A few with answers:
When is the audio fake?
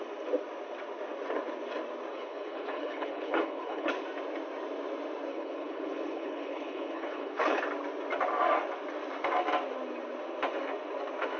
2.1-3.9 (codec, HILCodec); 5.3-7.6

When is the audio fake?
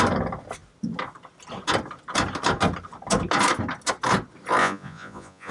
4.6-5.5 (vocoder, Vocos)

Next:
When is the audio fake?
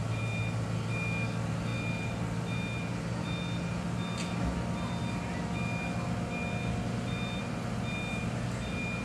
none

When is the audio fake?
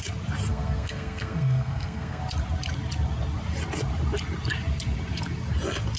0.5-2.2 (codec, SNAC)